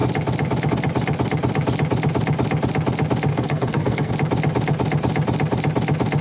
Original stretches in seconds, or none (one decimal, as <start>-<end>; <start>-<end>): 0.0-3.3; 4.1-6.2